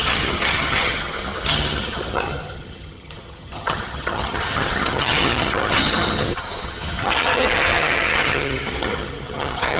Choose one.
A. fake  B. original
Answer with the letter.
A